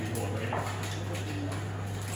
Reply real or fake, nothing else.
real